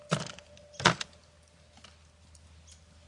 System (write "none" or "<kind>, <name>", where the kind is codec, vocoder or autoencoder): none